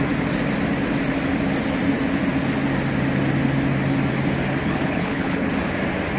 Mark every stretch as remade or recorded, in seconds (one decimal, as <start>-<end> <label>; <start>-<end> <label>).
0.0-4.6 recorded; 4.6-5.5 remade; 5.5-6.2 recorded